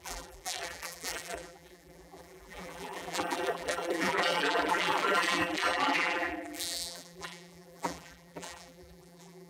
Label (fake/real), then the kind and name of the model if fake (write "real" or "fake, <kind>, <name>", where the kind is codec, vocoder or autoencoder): fake, vocoder, BigVGAN v2